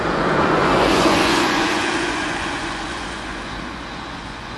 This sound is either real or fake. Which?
fake